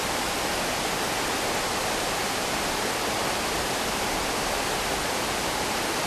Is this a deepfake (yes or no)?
no